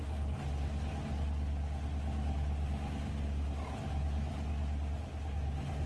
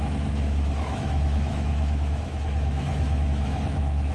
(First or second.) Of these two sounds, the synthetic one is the second